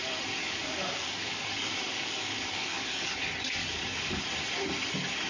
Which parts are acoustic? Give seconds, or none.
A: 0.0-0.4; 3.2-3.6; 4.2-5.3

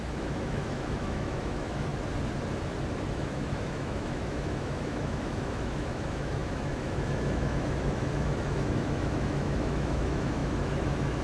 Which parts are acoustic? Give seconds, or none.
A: 1.9-3.1